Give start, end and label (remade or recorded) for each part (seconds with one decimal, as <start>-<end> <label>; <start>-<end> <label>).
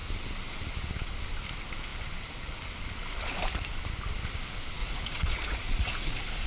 0.0-4.8 recorded; 4.8-6.5 remade